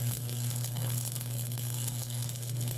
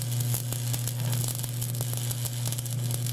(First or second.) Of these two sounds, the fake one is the first